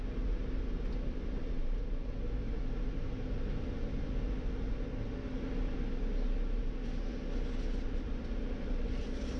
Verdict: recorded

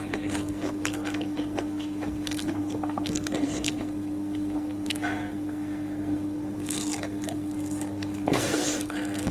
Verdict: remade